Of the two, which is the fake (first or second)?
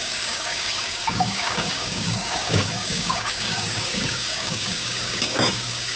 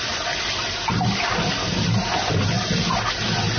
first